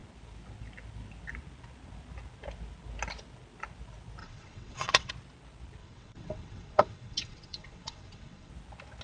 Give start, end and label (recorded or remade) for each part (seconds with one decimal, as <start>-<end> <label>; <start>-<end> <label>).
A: 0.0-4.2 recorded; 4.2-5.1 remade; 5.1-5.8 recorded; 5.8-8.5 remade; 8.5-9.0 recorded